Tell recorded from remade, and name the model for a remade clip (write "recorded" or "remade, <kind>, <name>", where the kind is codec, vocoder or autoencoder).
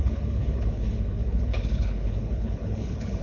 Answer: remade, codec, HILCodec